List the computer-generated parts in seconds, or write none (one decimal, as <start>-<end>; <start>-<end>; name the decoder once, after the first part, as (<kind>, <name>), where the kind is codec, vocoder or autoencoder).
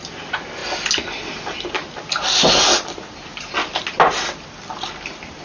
none